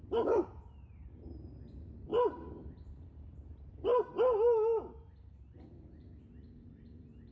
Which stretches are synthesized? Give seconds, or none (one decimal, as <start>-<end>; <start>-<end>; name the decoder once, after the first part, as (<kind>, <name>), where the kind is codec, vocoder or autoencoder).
0.0-3.9 (vocoder, BigVGAN v2); 6.0-7.3